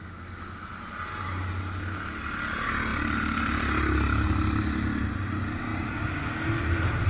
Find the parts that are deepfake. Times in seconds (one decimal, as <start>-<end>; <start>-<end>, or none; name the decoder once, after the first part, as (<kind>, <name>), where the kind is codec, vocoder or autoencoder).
none

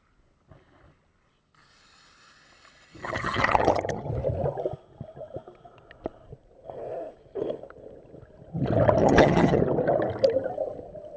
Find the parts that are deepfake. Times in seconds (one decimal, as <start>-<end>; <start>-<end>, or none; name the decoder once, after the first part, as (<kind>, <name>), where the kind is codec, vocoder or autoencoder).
3.0-4.1 (vocoder, HiFi-GAN); 9.0-9.6

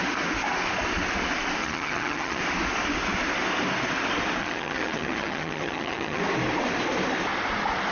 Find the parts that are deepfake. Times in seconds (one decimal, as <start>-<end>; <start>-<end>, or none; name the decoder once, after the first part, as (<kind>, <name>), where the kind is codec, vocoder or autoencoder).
1.6-2.4 (vocoder, HiFi-GAN); 4.4-6.2

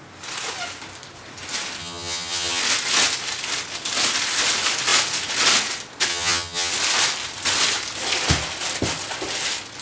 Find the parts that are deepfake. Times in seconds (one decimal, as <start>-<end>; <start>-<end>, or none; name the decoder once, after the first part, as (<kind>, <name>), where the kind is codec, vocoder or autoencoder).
1.8-2.6 (vocoder, HiFi-GAN); 6.1-6.7